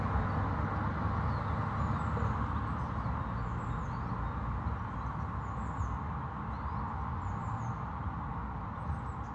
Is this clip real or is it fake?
real